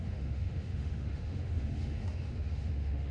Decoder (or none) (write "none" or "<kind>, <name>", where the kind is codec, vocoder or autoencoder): autoencoder, DAC-VAE